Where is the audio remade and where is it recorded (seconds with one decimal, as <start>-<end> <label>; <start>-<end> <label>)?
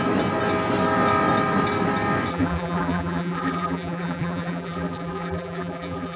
0.0-2.3 recorded; 2.3-6.2 remade